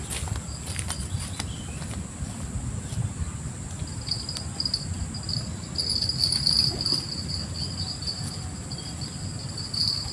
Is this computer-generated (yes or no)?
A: no